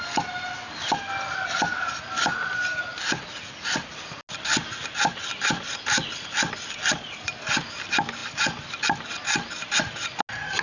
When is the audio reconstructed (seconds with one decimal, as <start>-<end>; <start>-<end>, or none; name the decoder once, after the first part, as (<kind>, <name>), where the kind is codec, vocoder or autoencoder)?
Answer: none